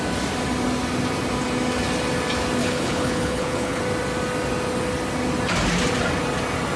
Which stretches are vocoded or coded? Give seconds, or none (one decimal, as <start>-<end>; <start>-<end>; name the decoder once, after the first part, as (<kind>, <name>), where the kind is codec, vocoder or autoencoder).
2.6-3.8 (codec, HILCodec)